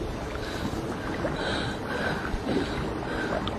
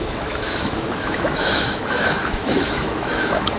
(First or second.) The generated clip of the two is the second